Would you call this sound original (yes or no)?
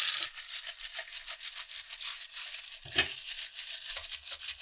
yes